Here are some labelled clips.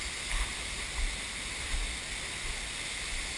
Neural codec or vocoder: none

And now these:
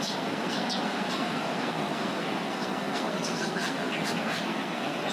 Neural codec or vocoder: codec, SNAC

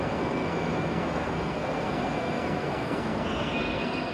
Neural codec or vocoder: codec, SNAC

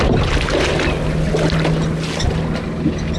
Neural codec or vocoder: none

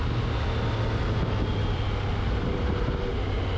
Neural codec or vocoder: none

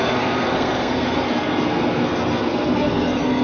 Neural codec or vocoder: codec, SNAC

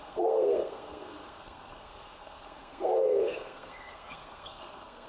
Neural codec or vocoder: codec, SNAC